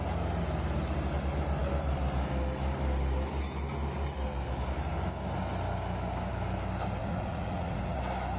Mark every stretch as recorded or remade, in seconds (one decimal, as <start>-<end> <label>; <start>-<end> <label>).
0.0-7.0 recorded; 7.0-8.0 remade; 8.0-8.4 recorded